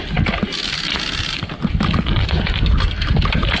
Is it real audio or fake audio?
real